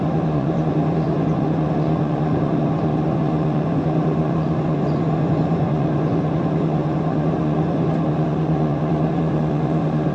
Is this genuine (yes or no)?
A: no